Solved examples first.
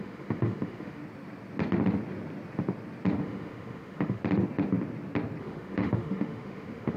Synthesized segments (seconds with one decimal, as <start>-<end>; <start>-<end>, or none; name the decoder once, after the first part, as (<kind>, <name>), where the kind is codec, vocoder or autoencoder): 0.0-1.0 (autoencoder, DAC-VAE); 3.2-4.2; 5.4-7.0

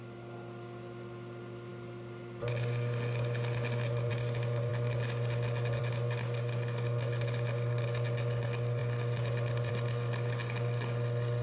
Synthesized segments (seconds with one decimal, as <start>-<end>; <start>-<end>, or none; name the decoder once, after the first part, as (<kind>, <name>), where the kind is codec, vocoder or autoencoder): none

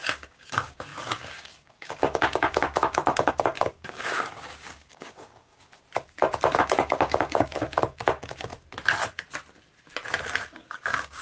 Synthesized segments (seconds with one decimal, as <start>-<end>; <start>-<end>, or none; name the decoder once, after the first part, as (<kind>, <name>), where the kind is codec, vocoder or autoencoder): 0.0-5.5 (codec, DAC); 6.6-8.5; 10.5-11.2

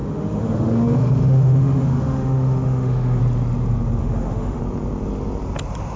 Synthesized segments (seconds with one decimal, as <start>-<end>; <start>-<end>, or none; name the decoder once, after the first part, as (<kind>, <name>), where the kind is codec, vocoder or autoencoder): 0.0-3.2 (autoencoder, DAC-VAE); 4.0-4.6

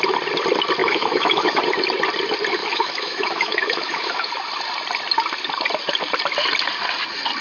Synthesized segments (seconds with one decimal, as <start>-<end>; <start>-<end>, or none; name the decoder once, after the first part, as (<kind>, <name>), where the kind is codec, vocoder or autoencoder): 0.8-1.6 (autoencoder, DAC-VAE); 2.6-4.3